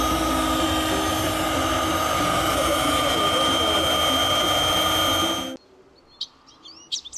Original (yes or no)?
yes